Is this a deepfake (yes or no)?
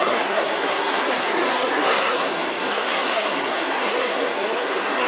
yes